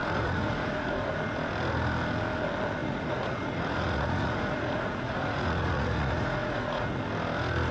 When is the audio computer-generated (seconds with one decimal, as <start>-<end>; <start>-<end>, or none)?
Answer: 0.0-1.1; 2.8-7.0